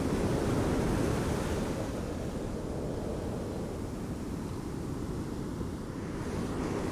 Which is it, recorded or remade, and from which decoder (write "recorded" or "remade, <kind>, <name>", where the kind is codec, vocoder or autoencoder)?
recorded